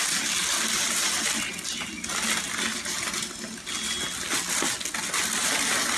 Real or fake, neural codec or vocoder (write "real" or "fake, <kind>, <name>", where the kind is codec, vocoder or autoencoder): real